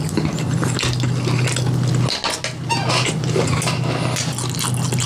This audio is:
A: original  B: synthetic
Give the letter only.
A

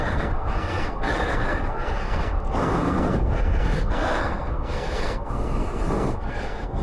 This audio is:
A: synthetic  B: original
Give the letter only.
A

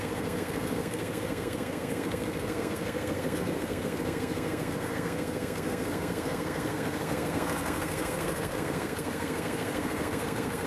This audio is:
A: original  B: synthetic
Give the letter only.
B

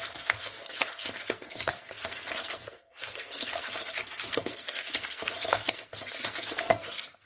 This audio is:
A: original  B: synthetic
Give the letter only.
B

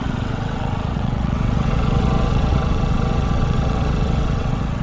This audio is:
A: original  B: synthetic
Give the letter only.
B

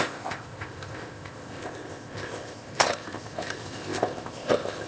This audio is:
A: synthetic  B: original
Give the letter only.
A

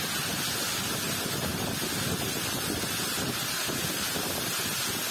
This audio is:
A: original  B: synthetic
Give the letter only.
A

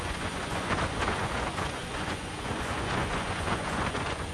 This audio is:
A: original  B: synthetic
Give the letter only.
B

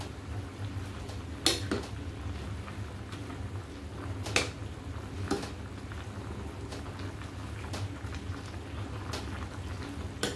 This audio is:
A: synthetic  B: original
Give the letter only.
B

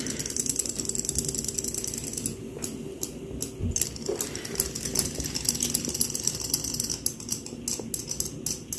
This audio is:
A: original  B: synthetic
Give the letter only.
A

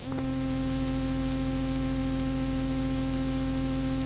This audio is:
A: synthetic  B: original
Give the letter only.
B